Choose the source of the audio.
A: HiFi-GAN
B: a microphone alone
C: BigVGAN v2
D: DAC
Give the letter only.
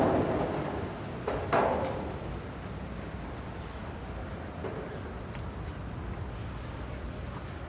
B